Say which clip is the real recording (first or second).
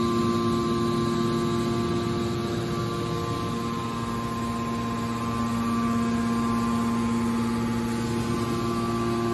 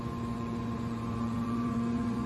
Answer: first